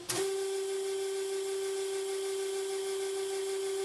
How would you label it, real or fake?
real